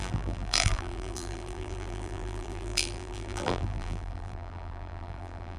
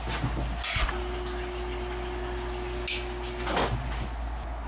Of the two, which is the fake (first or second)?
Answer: first